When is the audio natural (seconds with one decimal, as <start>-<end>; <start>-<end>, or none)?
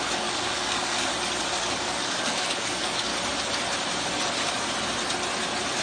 1.1-1.6; 3.1-5.8